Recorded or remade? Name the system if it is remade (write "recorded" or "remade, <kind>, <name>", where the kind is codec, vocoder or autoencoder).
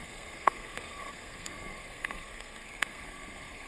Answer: remade, codec, SNAC